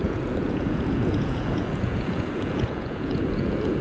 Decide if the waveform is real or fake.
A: fake